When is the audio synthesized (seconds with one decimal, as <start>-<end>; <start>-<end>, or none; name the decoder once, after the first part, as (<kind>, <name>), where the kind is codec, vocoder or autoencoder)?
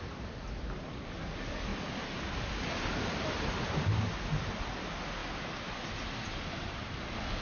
none